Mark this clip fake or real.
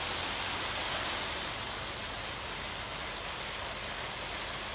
real